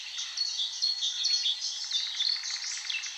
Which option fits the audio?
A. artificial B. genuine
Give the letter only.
B